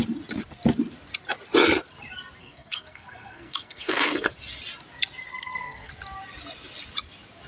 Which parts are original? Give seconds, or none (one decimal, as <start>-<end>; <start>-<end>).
0.0-2.4; 4.3-5.3; 5.9-7.5